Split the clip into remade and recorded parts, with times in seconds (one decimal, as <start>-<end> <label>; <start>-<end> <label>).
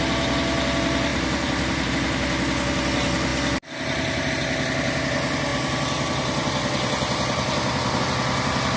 0.0-1.1 recorded; 1.1-1.9 remade; 1.9-8.8 recorded